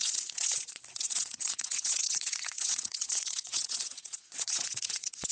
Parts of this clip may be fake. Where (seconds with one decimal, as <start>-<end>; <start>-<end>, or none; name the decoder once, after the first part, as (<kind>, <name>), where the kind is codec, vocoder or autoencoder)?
0.0-5.3 (vocoder, WaveNeXt)